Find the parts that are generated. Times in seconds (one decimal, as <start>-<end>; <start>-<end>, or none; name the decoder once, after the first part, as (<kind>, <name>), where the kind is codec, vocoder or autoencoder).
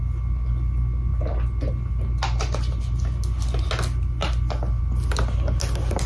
none